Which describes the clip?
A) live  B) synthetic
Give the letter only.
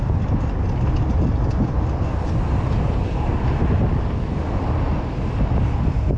A